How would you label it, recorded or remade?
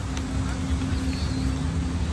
recorded